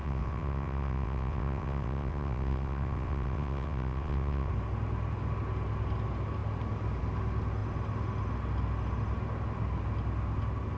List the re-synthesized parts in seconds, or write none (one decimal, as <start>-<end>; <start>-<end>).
0.0-4.5